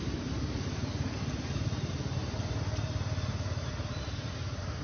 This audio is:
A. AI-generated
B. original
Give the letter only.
B